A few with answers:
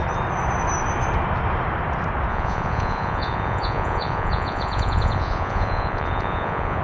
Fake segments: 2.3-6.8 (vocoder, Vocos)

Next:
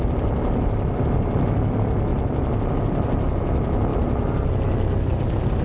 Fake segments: none

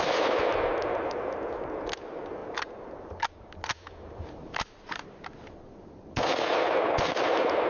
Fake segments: none